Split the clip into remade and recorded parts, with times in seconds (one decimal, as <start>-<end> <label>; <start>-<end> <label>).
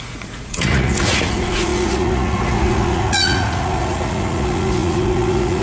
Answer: 0.0-5.6 remade